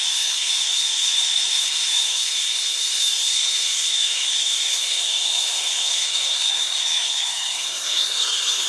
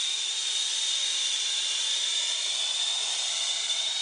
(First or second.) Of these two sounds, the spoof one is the first